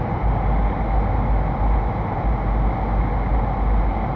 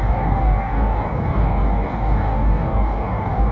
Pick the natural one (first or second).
first